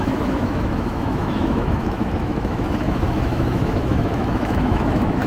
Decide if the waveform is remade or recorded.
remade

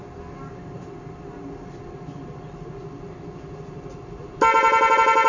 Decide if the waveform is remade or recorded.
recorded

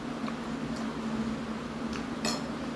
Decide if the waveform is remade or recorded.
recorded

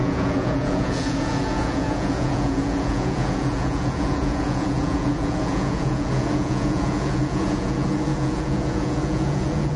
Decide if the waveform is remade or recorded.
remade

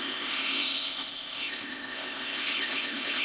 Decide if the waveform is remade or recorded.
remade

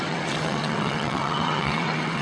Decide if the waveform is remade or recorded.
remade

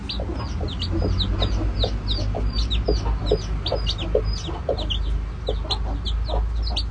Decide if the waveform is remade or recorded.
recorded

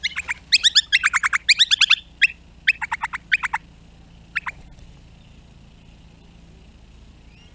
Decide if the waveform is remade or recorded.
recorded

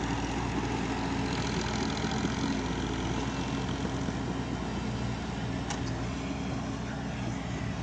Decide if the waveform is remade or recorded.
recorded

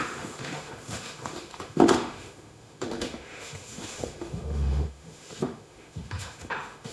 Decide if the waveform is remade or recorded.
remade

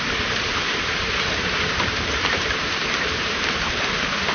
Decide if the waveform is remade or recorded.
remade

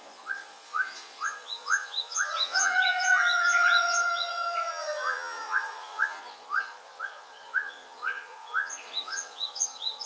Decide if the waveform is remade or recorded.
remade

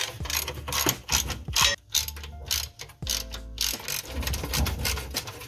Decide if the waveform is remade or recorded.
recorded